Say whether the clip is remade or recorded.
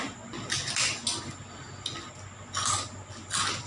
recorded